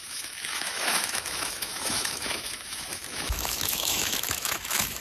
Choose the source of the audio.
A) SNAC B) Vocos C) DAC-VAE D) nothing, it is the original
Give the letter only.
C